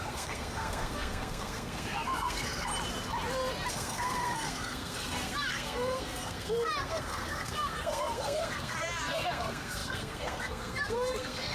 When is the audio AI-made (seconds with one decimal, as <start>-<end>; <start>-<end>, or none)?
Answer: 0.0-2.7; 3.7-11.5